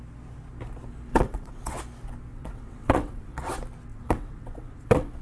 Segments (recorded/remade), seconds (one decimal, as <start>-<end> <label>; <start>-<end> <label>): 0.0-1.1 recorded; 1.1-1.8 remade; 1.8-2.3 recorded; 2.3-3.5 remade; 3.5-3.9 recorded; 3.9-5.2 remade